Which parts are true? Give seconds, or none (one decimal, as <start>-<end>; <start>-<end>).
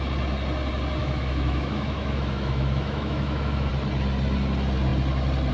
0.0-1.0; 3.7-5.5